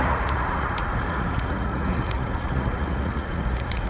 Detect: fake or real fake